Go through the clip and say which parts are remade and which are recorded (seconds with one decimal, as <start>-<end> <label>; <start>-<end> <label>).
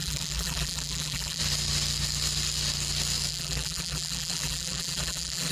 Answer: 0.0-1.4 remade; 1.4-3.3 recorded; 3.3-5.5 remade